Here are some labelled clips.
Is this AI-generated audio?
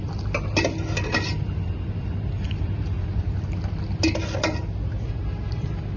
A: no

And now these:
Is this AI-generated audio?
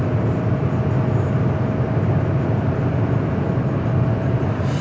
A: no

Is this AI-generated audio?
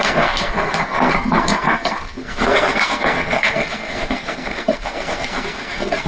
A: yes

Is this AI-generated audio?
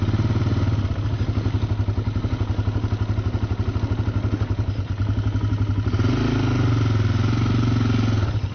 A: no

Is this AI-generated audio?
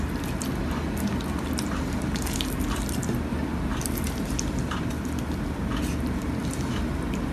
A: no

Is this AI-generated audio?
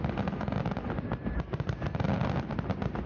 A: no